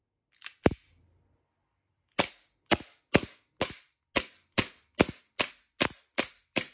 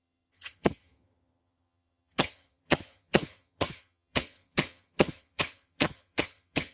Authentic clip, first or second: first